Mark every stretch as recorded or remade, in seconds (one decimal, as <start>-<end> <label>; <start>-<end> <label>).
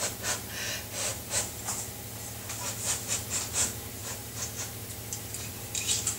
0.0-1.1 recorded; 1.1-1.6 remade; 1.6-4.0 recorded; 4.0-4.6 remade; 4.6-6.2 recorded